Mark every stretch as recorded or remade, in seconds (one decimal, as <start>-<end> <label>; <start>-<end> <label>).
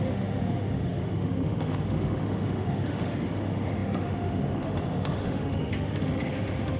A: 0.0-6.8 remade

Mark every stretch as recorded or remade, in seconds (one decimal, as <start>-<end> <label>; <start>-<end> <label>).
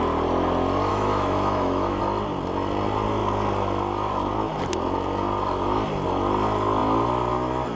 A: 0.0-0.9 recorded; 0.9-2.0 remade; 2.0-7.8 recorded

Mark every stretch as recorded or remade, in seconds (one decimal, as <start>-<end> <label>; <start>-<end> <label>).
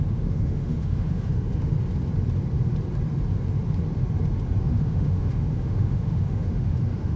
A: 0.0-1.7 remade; 1.7-4.6 recorded; 4.6-7.2 remade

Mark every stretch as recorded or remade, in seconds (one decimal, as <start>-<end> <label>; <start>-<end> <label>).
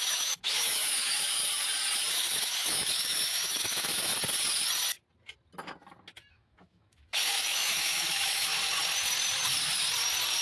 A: 0.0-1.4 remade; 1.4-2.1 recorded; 2.1-4.1 remade; 4.1-6.3 recorded; 6.3-8.5 remade; 8.5-10.4 recorded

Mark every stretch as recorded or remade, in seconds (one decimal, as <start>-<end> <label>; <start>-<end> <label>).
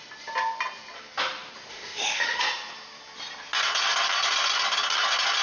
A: 0.0-1.7 recorded; 1.7-2.4 remade; 2.4-5.4 recorded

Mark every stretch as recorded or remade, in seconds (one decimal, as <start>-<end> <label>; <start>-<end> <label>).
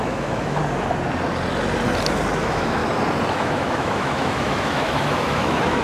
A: 0.0-0.6 remade; 0.6-2.4 recorded; 2.4-2.8 remade; 2.8-3.3 recorded; 3.3-5.8 remade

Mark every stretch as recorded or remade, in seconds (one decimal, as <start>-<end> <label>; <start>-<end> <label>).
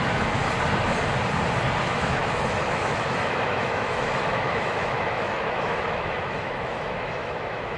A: 0.0-0.4 remade; 0.4-1.8 recorded; 1.8-7.8 remade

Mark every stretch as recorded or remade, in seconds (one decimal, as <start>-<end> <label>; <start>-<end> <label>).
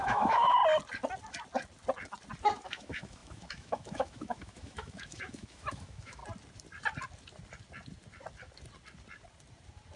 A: 0.0-0.6 remade; 0.6-2.4 recorded; 2.4-6.2 remade; 6.2-10.0 recorded